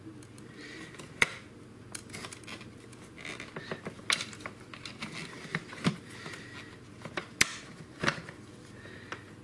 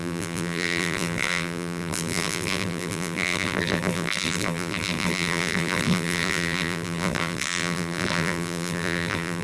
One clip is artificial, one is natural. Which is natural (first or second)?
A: first